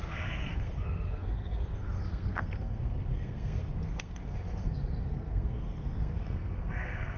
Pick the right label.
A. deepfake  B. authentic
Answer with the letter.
A